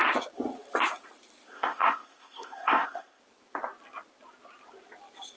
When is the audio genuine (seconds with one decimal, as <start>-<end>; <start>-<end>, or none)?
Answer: 0.0-1.5; 3.2-5.4